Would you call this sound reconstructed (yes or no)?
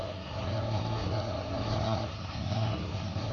yes